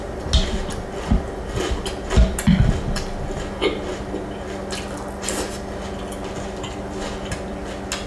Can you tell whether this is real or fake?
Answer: real